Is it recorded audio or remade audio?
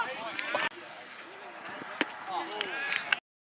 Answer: recorded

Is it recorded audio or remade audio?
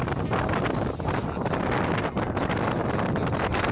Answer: recorded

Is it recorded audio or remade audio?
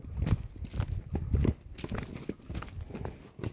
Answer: recorded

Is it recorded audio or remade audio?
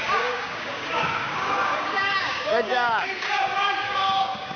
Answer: remade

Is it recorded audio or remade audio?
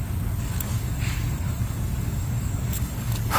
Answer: remade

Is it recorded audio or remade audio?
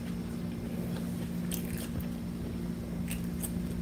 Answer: recorded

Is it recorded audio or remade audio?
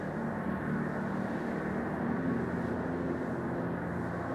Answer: recorded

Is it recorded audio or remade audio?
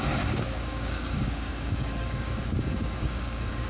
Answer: remade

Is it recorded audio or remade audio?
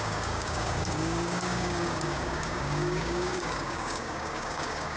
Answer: remade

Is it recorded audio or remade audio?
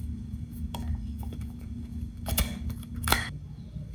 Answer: remade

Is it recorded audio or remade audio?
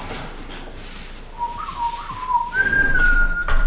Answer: recorded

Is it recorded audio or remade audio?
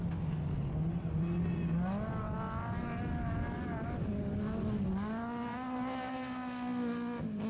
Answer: recorded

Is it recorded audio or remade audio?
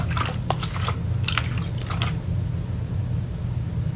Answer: recorded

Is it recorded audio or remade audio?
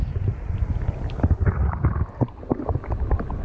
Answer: recorded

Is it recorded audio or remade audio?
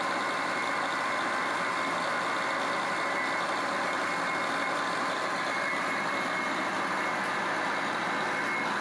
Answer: recorded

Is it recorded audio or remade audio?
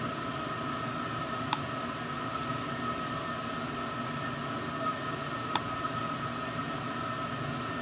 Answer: recorded